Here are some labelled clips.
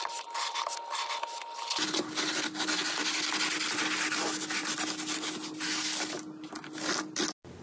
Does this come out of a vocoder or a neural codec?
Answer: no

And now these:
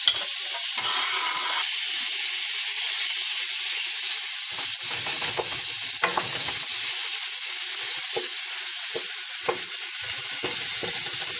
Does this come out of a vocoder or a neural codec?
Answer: no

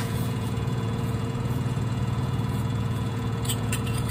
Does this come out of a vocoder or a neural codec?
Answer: yes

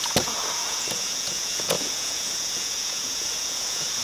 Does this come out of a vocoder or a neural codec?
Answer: yes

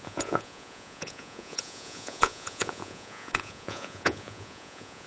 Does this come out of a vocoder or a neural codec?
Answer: yes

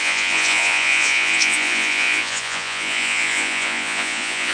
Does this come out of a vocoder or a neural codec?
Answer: yes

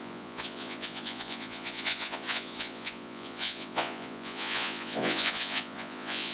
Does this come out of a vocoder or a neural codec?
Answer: yes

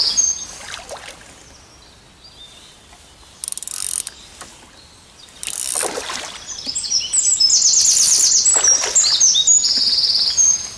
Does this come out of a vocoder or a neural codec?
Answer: no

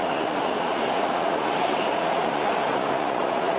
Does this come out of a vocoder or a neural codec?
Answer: yes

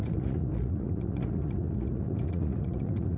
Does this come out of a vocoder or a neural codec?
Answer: yes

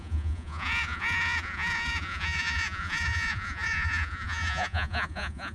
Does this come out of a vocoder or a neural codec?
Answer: yes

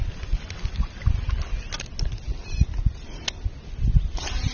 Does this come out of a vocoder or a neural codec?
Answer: no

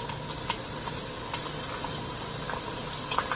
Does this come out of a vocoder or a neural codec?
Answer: no